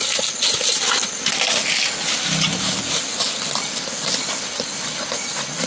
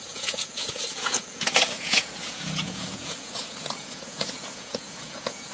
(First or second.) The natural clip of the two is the first